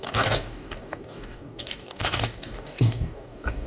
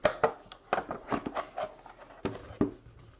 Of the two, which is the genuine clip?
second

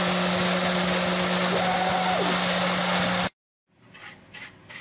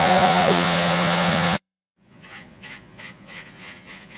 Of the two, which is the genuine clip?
first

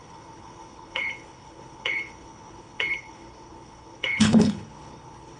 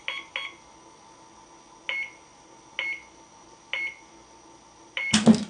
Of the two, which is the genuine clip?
second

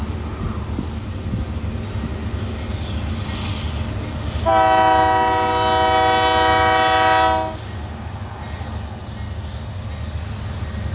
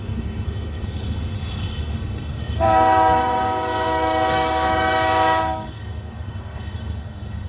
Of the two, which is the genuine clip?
first